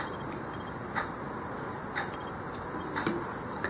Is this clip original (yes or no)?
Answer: yes